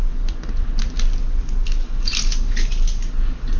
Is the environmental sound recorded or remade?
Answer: recorded